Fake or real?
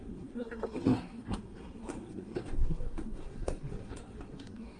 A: fake